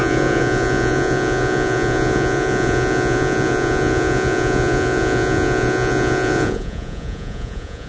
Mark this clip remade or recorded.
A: remade